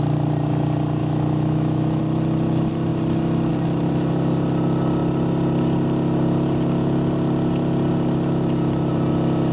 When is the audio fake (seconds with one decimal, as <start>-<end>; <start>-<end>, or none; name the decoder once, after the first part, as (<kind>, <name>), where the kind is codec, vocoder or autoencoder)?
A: 1.0-2.0 (autoencoder, DAC-VAE)